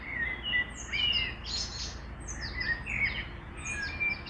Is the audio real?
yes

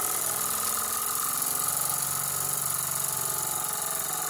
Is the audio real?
yes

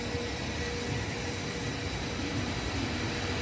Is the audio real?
yes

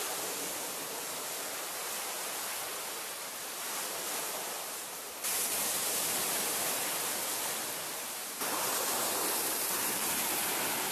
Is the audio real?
no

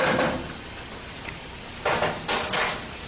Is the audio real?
yes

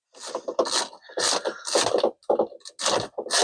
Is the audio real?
yes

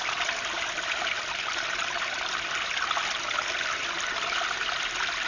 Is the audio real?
yes